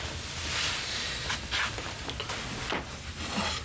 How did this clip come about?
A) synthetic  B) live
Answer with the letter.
B